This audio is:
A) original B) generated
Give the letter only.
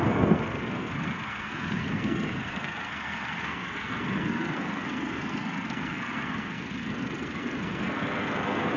B